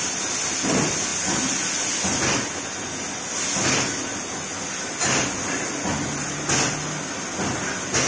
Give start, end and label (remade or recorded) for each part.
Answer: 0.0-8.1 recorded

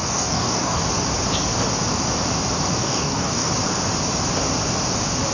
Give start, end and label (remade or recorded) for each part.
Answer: 0.0-0.8 remade; 0.8-2.8 recorded; 2.8-3.5 remade; 3.5-5.3 recorded

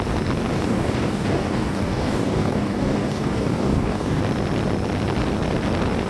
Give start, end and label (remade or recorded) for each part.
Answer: 0.0-0.5 recorded; 0.5-4.2 remade; 4.2-6.1 recorded

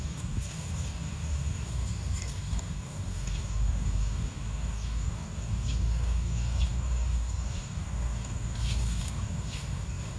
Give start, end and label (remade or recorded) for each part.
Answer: 0.0-10.2 remade

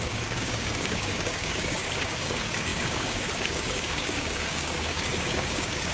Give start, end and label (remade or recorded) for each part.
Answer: 0.0-5.9 remade

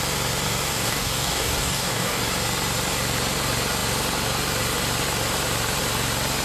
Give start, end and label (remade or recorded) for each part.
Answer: 0.0-0.7 recorded; 0.7-2.2 remade; 2.2-6.4 recorded